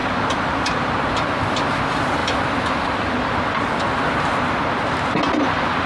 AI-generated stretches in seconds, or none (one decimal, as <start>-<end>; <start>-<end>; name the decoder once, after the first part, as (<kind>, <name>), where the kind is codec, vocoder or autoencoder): 0.0-1.1 (vocoder, BigVGAN v2)